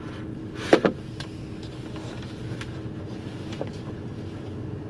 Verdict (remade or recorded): recorded